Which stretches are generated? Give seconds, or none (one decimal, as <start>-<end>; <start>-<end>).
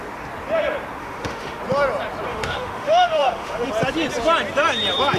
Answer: 1.0-1.6; 2.3-3.7